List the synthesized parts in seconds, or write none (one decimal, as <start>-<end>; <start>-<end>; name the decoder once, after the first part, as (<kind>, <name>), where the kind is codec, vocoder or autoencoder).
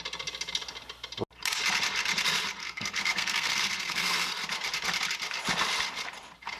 2.6-4.3 (codec, SNAC)